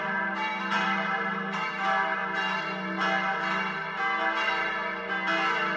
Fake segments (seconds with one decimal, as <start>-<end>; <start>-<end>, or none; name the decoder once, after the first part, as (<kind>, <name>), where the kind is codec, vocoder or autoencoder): 0.0-2.2 (vocoder, BigVGAN v2)